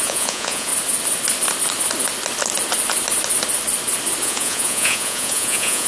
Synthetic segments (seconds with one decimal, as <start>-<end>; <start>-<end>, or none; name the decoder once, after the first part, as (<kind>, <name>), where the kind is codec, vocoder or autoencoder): 0.0-0.7 (vocoder, Vocos); 4.2-5.9